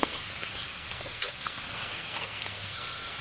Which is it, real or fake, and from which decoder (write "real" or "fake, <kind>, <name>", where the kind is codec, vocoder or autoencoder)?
fake, codec, SNAC